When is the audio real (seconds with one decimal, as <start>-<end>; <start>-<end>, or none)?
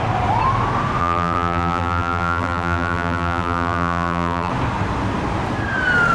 0.0-1.0; 4.5-6.1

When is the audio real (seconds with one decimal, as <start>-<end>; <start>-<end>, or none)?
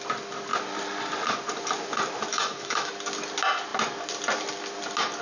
0.0-2.3; 2.9-5.2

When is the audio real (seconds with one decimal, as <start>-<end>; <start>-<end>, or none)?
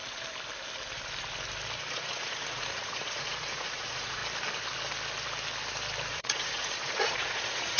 0.0-1.9; 4.2-6.1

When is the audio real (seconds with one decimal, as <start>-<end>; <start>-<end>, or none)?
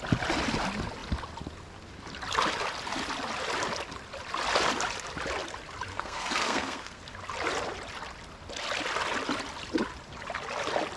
0.0-5.9; 7.0-11.0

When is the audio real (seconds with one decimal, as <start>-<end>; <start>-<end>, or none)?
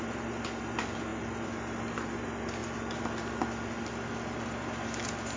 0.0-5.4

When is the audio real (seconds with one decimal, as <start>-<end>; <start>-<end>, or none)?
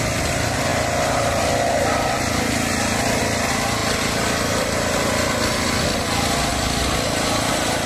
0.0-0.7; 3.2-3.8; 4.6-6.5; 7.5-7.9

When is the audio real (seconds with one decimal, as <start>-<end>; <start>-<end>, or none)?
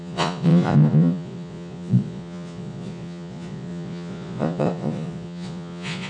none